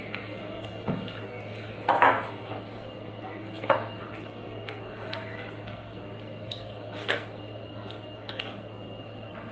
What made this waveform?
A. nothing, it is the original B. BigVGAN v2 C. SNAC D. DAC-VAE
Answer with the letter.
C